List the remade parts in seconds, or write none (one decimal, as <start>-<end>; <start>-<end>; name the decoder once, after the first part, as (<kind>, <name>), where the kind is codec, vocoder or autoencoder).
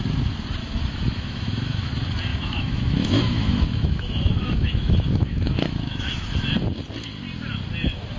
0.6-1.9 (autoencoder, DAC-VAE); 2.3-6.3